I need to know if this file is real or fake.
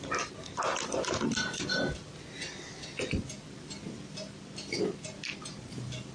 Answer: real